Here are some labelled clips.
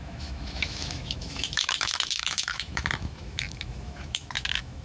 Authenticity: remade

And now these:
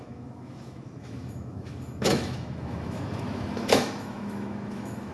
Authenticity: remade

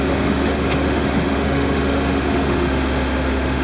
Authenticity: remade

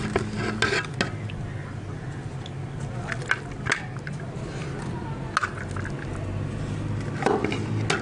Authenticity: recorded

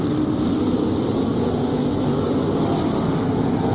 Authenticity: recorded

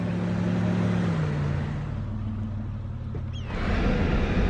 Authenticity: recorded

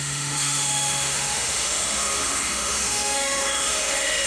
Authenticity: remade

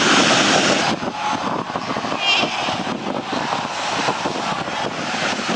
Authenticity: recorded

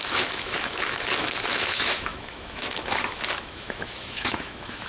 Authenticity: remade